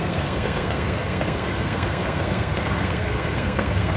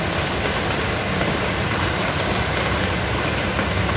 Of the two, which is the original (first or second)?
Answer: second